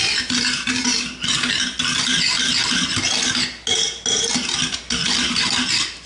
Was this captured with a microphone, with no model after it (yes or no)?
yes